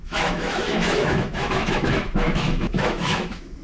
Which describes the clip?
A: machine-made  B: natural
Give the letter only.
A